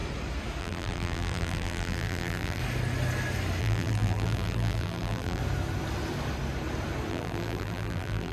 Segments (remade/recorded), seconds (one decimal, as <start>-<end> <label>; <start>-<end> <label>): 0.0-0.6 recorded; 0.6-2.6 remade; 2.6-3.6 recorded; 3.6-5.4 remade; 5.4-7.1 recorded; 7.1-8.3 remade